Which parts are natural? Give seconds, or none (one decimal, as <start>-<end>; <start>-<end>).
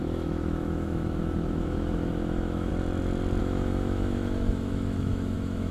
2.7-3.4